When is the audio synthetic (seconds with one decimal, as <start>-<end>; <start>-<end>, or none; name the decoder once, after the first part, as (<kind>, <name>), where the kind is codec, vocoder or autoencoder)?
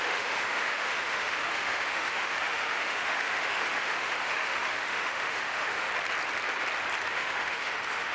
0.0-5.9 (autoencoder, DAC-VAE); 7.1-8.1